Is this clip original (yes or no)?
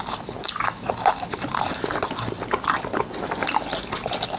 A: yes